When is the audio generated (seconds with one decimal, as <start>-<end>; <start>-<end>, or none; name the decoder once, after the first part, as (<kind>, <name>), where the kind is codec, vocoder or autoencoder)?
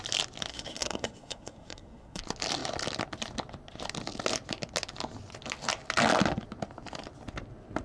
0.5-2.2 (codec, SNAC)